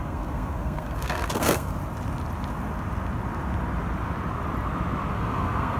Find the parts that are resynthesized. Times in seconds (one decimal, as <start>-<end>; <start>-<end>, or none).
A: 0.0-1.7; 5.1-5.8